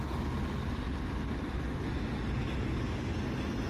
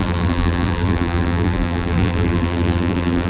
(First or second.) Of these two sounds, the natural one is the first